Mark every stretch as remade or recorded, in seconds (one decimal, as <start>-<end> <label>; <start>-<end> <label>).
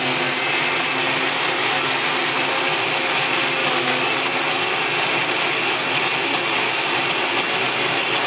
0.0-8.3 recorded